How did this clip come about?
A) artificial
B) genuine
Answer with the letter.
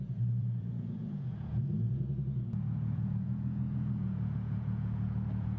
A